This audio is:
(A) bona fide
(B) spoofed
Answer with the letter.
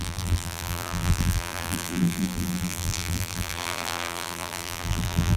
B